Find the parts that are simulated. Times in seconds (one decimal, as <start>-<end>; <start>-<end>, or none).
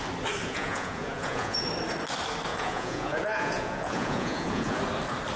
0.4-1.7; 2.5-4.8